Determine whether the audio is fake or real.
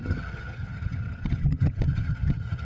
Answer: fake